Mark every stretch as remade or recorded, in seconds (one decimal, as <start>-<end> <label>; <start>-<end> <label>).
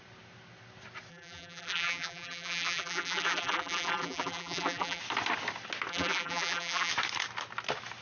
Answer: 0.0-1.1 recorded; 1.1-5.0 remade; 5.0-5.9 recorded; 5.9-6.9 remade; 6.9-8.0 recorded